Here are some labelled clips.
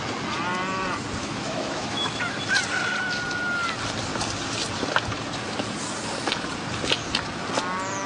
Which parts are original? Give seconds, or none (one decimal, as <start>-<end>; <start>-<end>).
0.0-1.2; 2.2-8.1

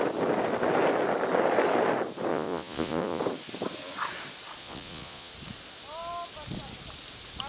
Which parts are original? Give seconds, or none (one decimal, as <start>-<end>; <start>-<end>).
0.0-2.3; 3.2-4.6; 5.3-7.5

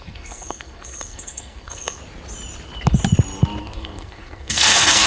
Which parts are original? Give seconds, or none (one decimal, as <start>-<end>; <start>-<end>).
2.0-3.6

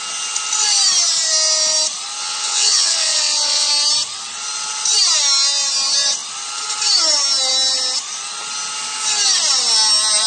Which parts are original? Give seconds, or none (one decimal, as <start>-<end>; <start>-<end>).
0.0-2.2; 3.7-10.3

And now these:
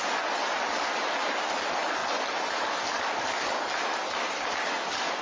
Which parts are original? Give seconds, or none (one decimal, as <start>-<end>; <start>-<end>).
0.0-5.2